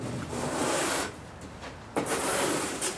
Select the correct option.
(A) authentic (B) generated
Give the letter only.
B